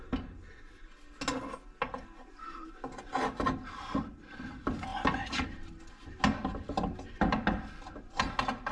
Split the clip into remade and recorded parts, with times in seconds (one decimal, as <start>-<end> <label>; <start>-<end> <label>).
0.0-8.7 recorded